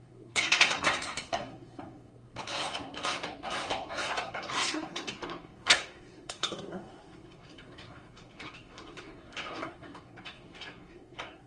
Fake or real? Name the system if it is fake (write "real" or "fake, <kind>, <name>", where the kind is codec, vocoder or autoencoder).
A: fake, codec, SNAC